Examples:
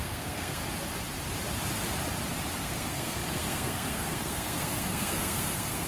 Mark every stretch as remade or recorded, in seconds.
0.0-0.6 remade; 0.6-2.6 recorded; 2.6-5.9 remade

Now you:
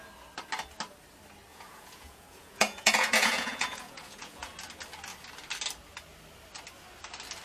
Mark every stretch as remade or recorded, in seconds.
0.0-1.5 recorded; 1.5-4.5 remade; 4.5-7.4 recorded

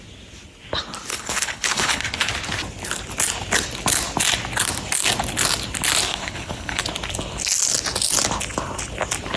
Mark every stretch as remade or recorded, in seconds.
0.0-1.1 recorded; 1.1-2.3 remade; 2.3-6.1 recorded; 6.1-6.8 remade; 6.8-9.4 recorded